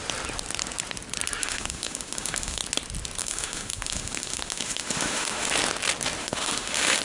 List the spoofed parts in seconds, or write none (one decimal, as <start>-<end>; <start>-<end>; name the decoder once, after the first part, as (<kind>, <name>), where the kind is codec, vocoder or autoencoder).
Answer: 1.4-2.6 (autoencoder, DAC-VAE); 3.2-5.5; 6.2-7.0